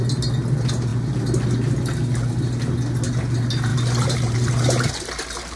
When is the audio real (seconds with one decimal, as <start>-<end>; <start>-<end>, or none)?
0.0-3.7; 4.9-5.6